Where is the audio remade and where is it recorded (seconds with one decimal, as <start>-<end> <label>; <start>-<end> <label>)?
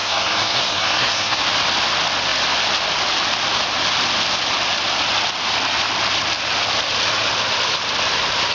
0.0-1.4 remade; 1.4-8.5 recorded